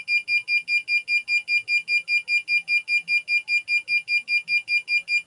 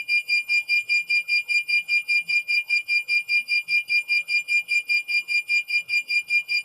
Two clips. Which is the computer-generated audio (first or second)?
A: second